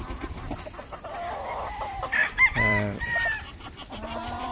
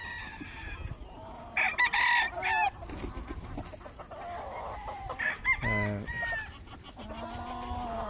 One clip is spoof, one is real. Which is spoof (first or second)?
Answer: first